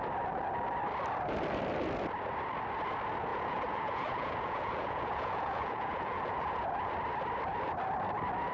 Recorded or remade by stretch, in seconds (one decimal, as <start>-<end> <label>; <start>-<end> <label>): 0.0-3.3 recorded; 3.3-6.9 remade; 6.9-8.5 recorded